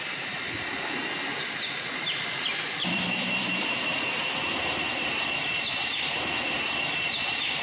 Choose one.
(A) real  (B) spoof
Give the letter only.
B